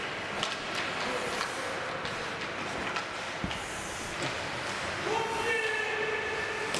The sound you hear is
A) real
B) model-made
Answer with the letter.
A